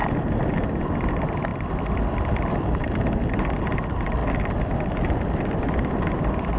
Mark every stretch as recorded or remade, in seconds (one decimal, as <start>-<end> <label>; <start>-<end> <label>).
0.0-1.1 recorded; 1.1-4.2 remade; 4.2-5.0 recorded; 5.0-6.6 remade